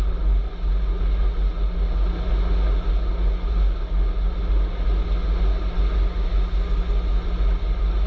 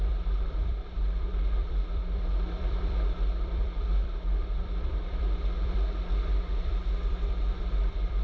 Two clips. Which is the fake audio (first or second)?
second